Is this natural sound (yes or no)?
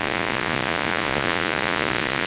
no